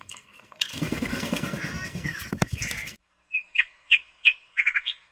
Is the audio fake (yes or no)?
yes